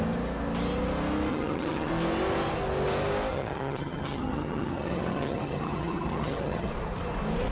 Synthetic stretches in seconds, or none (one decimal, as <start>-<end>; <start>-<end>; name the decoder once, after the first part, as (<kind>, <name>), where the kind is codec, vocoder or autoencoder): 1.3-1.9 (vocoder, HiFi-GAN); 3.3-6.7